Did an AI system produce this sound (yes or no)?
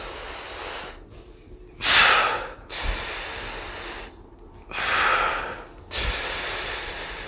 no